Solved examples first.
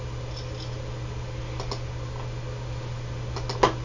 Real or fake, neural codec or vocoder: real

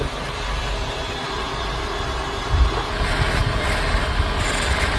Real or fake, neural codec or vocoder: real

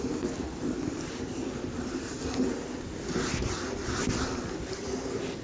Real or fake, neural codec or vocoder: real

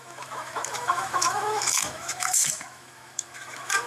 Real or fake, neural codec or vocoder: fake, autoencoder, DAC-VAE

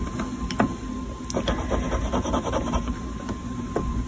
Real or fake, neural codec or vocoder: real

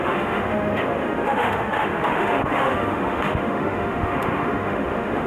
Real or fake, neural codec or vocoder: fake, autoencoder, DAC-VAE